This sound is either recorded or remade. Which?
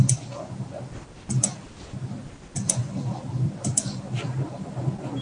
recorded